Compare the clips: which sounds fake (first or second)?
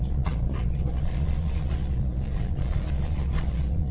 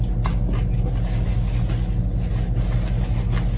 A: first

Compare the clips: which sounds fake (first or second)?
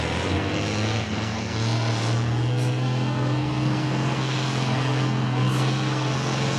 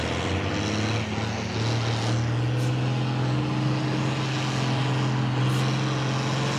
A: first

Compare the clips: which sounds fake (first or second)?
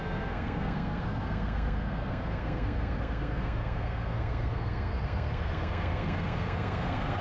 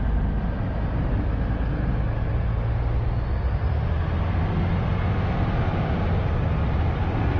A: first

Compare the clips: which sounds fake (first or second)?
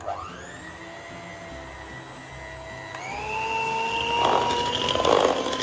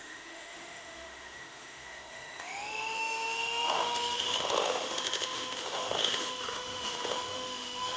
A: second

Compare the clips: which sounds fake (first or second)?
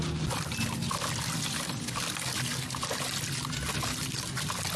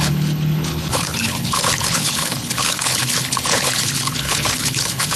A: second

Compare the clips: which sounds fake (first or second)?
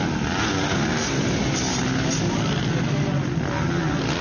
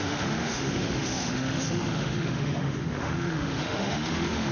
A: second